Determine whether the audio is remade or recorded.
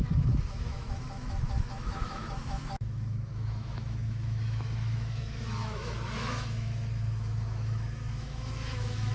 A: remade